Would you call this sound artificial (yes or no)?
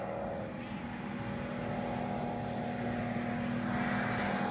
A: no